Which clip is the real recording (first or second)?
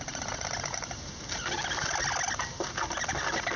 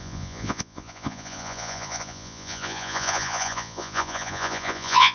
first